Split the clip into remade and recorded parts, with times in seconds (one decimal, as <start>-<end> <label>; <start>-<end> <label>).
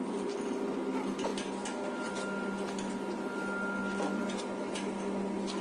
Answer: 0.0-5.6 recorded